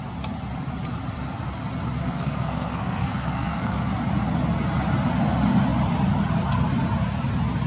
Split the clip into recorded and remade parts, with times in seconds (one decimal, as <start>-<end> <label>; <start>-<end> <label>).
0.0-2.0 recorded; 2.0-3.9 remade; 3.9-7.7 recorded